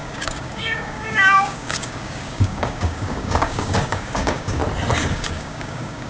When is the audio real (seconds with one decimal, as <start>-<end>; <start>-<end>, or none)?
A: 4.6-5.1